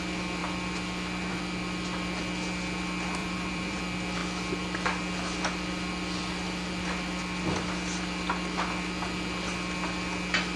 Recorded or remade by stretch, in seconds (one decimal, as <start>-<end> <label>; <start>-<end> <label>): 0.0-3.2 recorded; 3.2-3.8 remade; 3.8-10.6 recorded